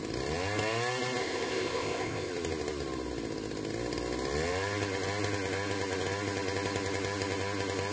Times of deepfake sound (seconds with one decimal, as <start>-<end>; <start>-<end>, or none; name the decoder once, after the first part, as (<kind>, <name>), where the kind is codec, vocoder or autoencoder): 1.2-2.3 (codec, ZipCodec)